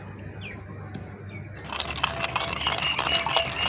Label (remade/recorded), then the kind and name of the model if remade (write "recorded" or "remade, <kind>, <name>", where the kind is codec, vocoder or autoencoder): recorded